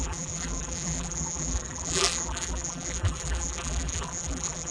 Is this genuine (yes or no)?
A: no